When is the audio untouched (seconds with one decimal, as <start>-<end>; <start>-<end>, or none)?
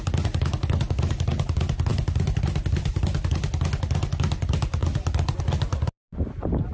0.0-1.9; 2.4-6.7